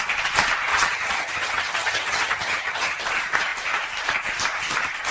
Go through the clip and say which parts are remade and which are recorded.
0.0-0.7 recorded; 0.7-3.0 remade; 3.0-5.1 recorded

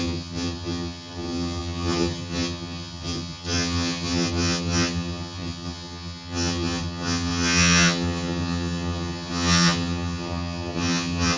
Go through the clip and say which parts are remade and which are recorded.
0.0-11.4 remade

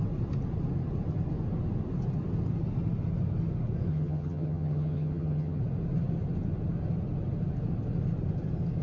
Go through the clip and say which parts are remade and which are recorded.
0.0-3.9 recorded; 3.9-5.6 remade; 5.6-8.8 recorded